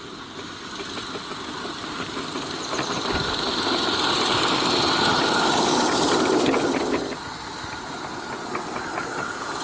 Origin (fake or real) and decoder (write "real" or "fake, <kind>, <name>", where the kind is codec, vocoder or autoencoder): real